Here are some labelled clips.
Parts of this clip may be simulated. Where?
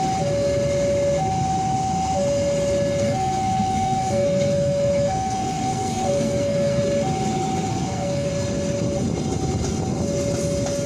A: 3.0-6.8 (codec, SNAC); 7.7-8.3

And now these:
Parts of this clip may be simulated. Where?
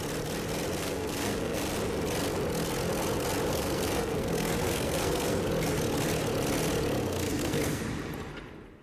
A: 0.8-1.6 (codec, SNAC); 3.5-5.4; 7.0-7.8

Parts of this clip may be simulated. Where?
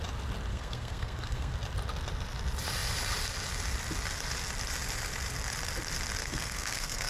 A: 0.5-1.5 (codec, SNAC); 6.2-7.1